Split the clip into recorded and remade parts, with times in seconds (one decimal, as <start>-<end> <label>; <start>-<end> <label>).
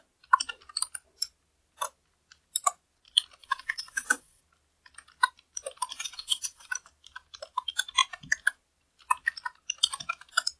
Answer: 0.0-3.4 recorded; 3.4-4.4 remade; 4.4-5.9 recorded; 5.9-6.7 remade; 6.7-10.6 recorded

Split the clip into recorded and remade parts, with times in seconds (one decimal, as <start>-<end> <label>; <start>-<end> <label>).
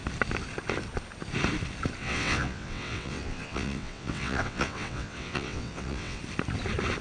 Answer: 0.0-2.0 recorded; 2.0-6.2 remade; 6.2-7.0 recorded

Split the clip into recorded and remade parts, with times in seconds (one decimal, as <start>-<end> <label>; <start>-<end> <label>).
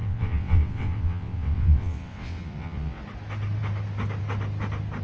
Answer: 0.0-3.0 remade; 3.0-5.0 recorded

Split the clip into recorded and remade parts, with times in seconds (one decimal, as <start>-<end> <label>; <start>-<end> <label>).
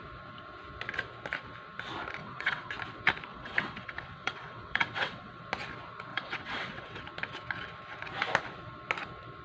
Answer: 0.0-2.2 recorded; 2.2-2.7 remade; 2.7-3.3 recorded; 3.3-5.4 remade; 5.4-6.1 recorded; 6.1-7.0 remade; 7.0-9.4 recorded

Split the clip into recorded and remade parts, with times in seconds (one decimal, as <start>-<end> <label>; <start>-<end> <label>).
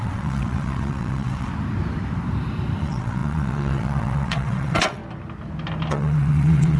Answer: 0.0-1.5 remade; 1.5-2.8 recorded; 2.8-5.0 remade; 5.0-5.9 recorded; 5.9-6.8 remade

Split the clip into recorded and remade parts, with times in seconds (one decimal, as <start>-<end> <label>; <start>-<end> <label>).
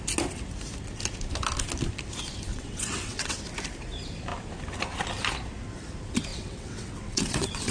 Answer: 0.0-2.5 recorded; 2.5-3.4 remade; 3.4-6.3 recorded; 6.3-7.7 remade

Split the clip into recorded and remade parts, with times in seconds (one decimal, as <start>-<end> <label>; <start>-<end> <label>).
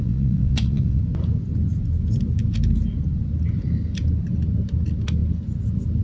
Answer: 0.0-1.0 remade; 1.0-6.0 recorded